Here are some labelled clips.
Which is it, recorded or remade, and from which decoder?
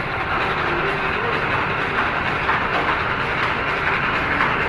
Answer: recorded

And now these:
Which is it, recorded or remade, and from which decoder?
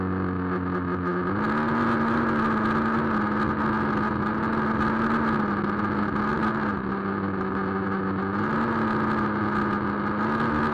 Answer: recorded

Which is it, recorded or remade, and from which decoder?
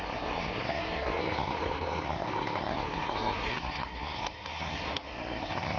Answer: remade, codec, SNAC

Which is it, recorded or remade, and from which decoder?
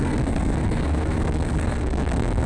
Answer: remade, codec, SNAC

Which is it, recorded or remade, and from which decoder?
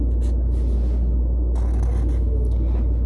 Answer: recorded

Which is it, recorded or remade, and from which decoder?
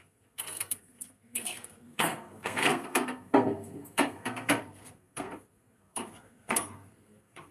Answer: remade, codec, SNAC